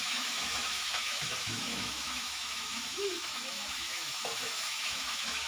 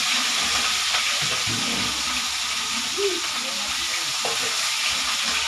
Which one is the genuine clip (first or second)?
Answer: second